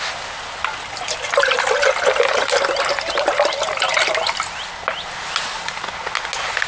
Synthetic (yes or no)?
no